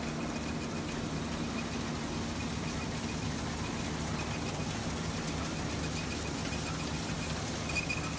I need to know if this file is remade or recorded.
recorded